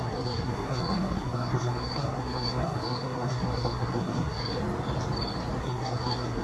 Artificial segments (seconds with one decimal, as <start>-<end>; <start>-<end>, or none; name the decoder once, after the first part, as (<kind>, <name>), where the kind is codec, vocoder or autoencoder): 0.0-4.6 (codec, SNAC); 5.6-6.4